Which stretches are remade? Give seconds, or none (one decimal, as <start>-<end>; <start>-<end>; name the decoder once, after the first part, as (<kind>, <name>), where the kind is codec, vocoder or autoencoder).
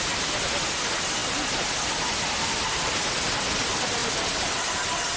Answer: none